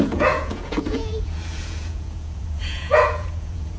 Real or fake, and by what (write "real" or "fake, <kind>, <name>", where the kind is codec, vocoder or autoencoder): fake, vocoder, Vocos